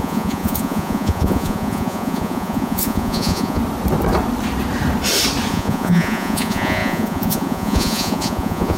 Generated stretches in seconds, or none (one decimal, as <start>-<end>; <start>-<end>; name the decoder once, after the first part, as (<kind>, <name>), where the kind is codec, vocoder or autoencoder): 0.0-3.6 (vocoder, Vocos); 5.5-8.8